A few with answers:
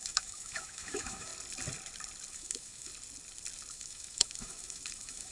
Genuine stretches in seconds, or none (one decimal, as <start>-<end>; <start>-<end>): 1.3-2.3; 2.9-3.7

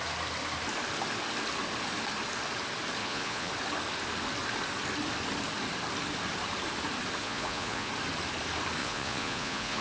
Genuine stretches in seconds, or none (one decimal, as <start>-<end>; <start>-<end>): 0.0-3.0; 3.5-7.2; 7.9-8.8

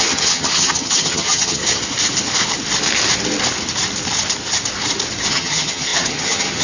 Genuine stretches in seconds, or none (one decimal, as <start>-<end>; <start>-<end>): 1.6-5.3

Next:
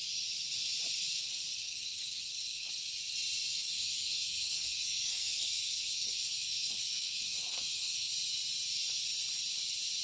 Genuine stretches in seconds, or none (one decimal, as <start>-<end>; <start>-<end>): 0.0-1.6; 2.7-3.5; 8.1-10.0

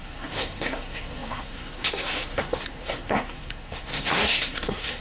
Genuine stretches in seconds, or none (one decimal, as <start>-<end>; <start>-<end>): none

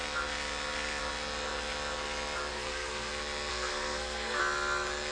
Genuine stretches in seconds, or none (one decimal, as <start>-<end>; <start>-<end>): 0.0-2.5; 3.1-3.5; 4.4-5.1